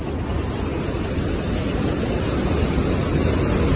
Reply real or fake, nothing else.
real